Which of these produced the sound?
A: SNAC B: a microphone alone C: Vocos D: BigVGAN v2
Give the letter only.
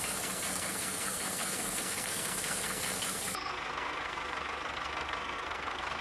A